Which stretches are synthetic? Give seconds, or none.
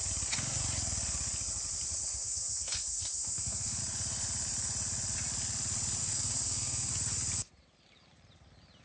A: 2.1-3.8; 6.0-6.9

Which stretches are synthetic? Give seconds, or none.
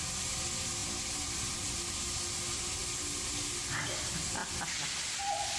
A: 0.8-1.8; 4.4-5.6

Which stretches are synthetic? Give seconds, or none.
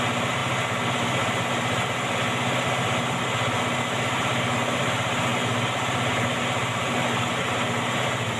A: none